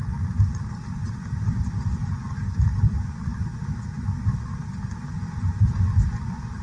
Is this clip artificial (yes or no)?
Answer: no